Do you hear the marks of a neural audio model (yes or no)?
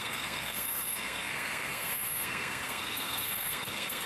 yes